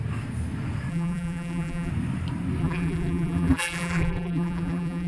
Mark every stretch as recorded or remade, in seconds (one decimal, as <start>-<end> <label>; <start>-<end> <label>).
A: 0.0-0.9 recorded; 0.9-1.9 remade; 1.9-2.6 recorded; 2.6-5.1 remade